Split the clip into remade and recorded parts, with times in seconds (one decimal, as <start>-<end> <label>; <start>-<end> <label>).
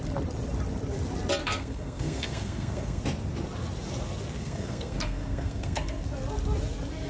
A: 0.0-1.4 recorded; 1.4-3.0 remade; 3.0-4.4 recorded; 4.4-6.0 remade; 6.0-7.1 recorded